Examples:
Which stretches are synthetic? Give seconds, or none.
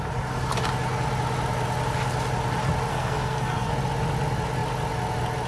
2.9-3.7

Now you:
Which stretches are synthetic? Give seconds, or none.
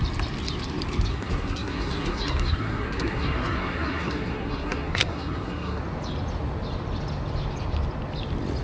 1.1-5.8